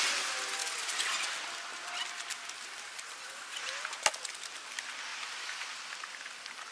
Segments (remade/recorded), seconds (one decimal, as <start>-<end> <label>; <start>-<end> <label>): 0.0-6.7 recorded